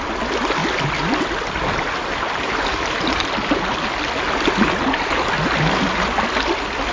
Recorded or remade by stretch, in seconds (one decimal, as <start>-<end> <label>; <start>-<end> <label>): 0.0-6.9 recorded